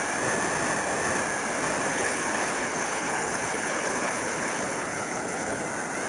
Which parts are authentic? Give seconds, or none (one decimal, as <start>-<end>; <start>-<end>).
0.0-1.9; 5.6-6.1